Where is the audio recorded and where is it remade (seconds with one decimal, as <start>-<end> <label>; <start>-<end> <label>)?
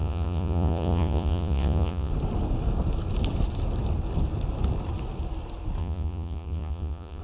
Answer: 0.0-2.1 remade; 2.1-5.8 recorded; 5.8-7.2 remade